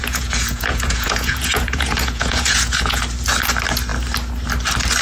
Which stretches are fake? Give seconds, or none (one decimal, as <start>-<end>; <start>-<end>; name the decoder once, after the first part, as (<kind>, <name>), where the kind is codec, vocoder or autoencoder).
0.0-3.0 (vocoder, Vocos)